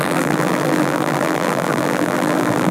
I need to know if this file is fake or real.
fake